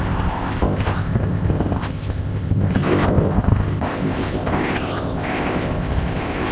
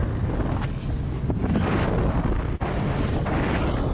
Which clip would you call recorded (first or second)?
second